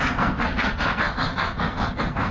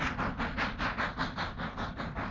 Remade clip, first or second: first